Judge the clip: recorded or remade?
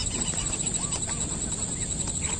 recorded